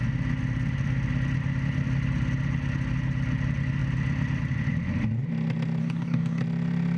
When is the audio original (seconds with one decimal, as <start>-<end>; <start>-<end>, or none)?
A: 0.0-5.8; 6.4-7.0